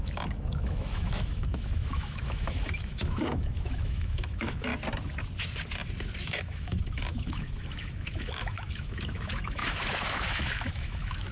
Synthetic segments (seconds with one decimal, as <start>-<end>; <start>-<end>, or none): 0.0-4.7; 6.2-11.3